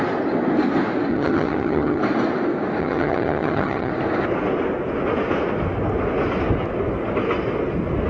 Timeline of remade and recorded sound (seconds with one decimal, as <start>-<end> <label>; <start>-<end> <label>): 0.0-1.1 recorded; 1.1-2.0 remade; 2.0-2.8 recorded; 2.8-3.9 remade; 3.9-8.1 recorded